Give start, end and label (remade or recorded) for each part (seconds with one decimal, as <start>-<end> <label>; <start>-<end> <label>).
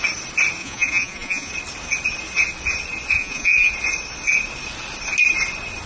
0.0-0.6 recorded; 0.6-1.5 remade; 1.5-3.2 recorded; 3.2-3.7 remade; 3.7-5.9 recorded